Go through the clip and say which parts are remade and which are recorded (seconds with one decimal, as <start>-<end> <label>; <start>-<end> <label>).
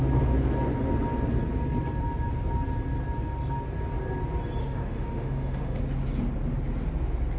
0.0-4.6 recorded; 4.6-5.8 remade; 5.8-7.4 recorded